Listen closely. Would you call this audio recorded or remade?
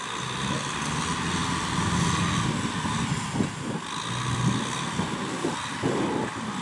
recorded